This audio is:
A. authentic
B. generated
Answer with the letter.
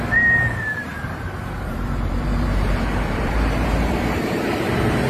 B